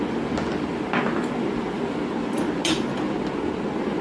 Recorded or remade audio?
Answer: recorded